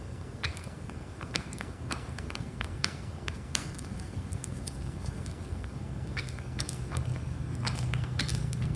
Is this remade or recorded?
remade